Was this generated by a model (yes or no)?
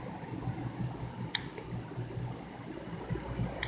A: no